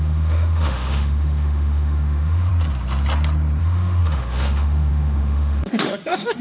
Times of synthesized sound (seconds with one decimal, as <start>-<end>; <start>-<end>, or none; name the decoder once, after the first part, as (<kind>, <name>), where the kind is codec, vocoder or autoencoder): 0.0-2.5 (autoencoder, DAC-VAE); 3.6-6.4